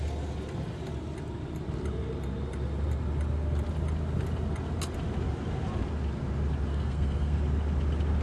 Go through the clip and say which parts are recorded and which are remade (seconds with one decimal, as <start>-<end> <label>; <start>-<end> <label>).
0.0-6.7 recorded; 6.7-7.4 remade; 7.4-8.2 recorded